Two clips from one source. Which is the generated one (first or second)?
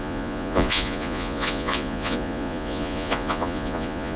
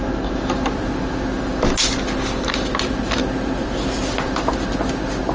first